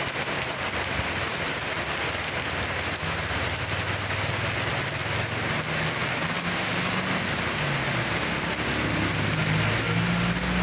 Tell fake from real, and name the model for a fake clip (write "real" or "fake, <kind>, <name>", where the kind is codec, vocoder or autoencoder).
real